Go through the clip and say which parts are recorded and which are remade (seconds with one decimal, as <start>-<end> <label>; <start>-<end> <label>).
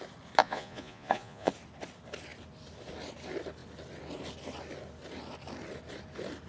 0.0-0.4 recorded; 0.4-1.5 remade; 1.5-6.5 recorded